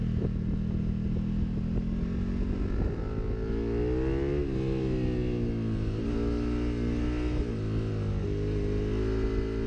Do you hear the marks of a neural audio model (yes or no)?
no